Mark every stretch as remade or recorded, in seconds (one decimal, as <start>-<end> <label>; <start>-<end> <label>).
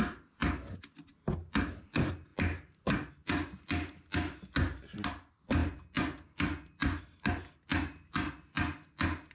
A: 0.0-9.3 recorded